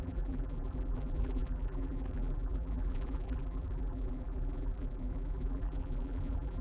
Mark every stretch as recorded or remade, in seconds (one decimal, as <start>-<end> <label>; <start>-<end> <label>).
0.0-6.6 remade